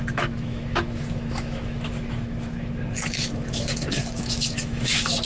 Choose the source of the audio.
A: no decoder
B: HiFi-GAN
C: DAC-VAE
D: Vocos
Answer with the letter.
C